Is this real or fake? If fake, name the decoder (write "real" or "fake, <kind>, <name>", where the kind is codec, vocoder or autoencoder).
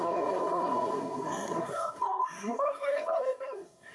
fake, codec, SNAC